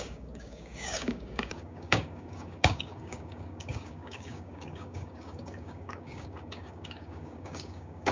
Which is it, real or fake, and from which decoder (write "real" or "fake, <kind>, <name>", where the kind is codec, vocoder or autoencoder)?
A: fake, codec, DAC